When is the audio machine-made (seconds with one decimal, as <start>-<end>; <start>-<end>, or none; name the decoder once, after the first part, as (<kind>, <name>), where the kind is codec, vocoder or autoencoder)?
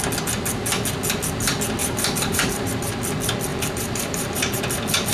1.8-2.7 (vocoder, BigVGAN v2); 3.5-4.6